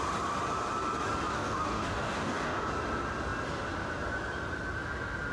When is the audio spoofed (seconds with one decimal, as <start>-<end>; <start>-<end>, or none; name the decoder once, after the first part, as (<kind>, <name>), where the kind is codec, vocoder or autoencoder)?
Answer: 1.3-2.7 (codec, DAC)